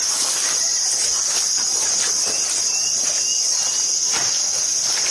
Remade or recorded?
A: recorded